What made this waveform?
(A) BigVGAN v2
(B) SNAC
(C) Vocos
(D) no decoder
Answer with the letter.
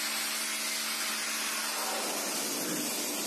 D